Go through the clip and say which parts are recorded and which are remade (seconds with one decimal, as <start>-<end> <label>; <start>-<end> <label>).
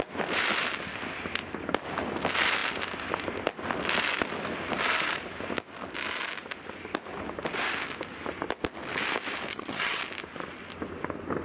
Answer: 0.0-9.5 recorded; 9.5-10.0 remade; 10.0-11.4 recorded